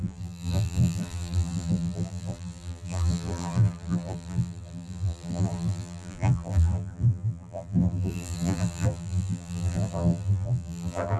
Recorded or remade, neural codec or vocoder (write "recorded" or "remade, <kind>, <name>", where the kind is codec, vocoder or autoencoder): remade, vocoder, BigVGAN v2